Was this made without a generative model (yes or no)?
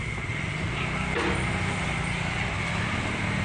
yes